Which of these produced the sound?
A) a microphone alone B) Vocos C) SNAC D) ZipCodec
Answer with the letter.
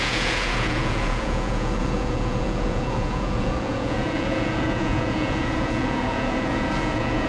B